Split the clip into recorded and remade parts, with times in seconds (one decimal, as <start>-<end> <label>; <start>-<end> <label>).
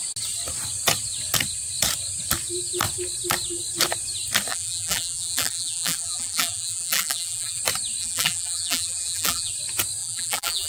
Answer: 0.0-4.5 recorded; 4.5-7.6 remade; 7.6-8.0 recorded; 8.0-9.5 remade; 9.5-10.0 recorded; 10.0-10.7 remade